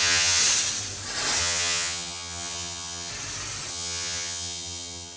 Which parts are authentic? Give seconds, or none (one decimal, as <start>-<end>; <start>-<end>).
0.4-1.4; 3.1-3.7